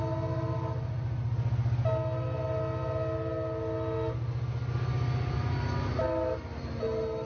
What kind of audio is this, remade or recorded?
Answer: recorded